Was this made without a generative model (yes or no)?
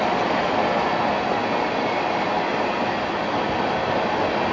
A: yes